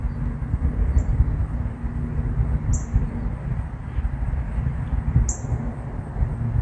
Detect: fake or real real